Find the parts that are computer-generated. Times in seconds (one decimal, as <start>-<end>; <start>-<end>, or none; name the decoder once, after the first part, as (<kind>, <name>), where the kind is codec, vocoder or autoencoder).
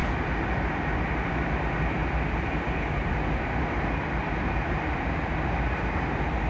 2.0-3.1 (vocoder, BigVGAN v2)